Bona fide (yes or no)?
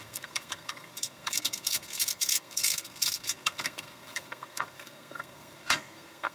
no